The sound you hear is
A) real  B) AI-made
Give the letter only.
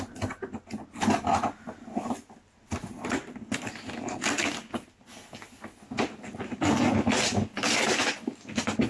A